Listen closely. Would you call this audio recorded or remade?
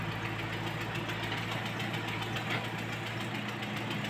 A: recorded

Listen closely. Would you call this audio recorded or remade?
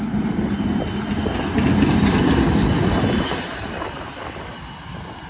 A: recorded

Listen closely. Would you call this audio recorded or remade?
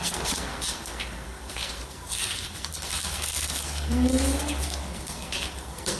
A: remade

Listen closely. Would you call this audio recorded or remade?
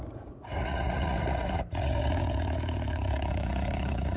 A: remade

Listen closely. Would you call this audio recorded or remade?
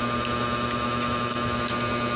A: recorded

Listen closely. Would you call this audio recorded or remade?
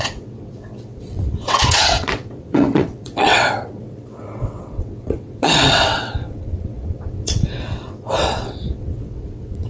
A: remade